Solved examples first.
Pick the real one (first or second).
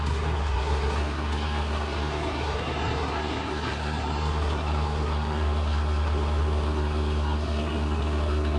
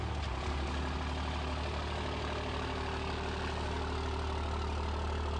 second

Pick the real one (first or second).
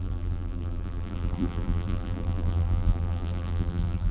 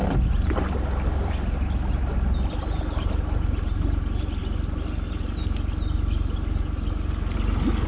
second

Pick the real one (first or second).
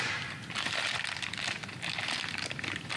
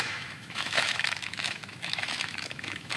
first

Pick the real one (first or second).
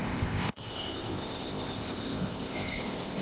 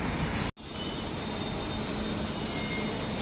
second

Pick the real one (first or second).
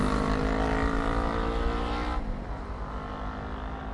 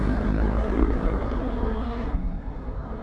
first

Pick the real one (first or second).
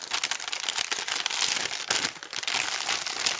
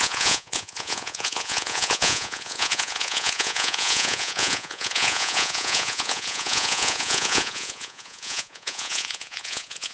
first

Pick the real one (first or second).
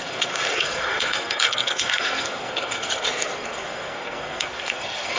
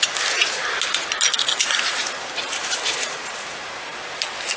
second